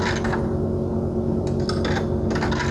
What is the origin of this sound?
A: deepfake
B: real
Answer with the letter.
B